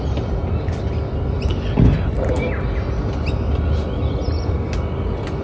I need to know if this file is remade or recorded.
recorded